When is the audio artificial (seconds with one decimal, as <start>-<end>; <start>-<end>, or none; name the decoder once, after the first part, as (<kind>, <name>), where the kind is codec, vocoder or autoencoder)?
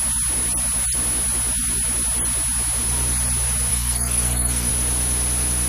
3.7-4.7 (codec, SNAC)